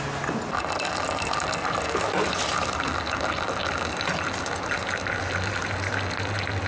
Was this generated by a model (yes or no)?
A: no